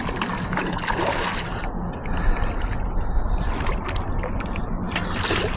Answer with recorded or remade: recorded